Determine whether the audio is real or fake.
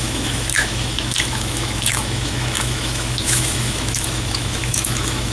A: fake